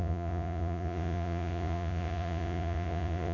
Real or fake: fake